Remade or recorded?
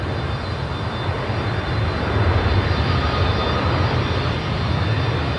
recorded